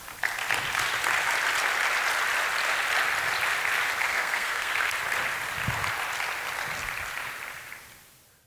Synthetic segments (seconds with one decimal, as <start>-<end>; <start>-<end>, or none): 4.1-4.7